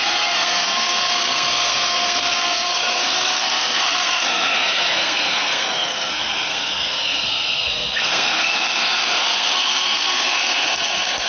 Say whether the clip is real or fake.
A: fake